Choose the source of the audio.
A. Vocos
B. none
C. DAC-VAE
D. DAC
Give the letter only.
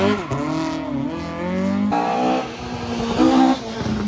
B